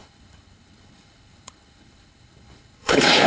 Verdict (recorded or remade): remade